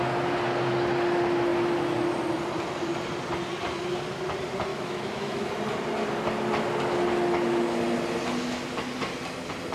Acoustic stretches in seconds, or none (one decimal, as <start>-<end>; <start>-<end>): 0.0-4.7; 5.5-9.7